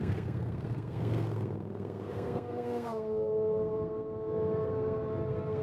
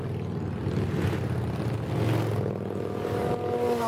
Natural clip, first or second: second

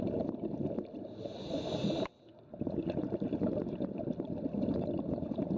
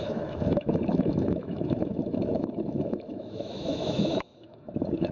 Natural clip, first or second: first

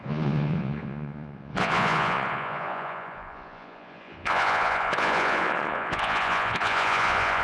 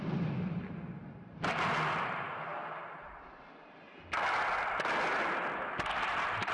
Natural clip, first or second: second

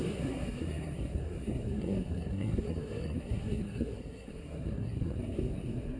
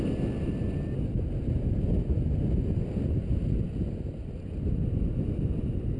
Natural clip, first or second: second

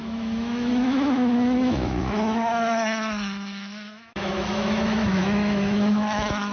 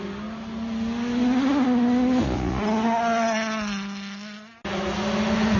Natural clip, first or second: second